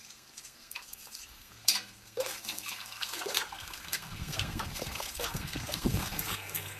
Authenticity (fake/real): fake